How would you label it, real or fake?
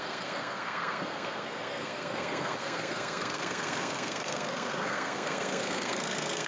fake